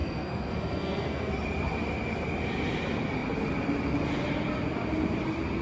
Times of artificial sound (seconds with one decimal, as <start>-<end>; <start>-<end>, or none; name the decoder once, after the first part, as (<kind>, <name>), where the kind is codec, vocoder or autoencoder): 0.0-1.3 (codec, SNAC)